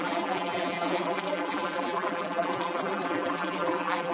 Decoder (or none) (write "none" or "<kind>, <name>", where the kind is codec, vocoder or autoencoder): vocoder, BigVGAN v2